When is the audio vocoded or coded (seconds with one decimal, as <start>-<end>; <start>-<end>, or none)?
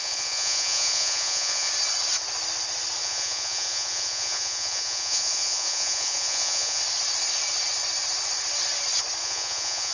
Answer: 0.0-1.7; 3.0-6.8; 9.2-9.9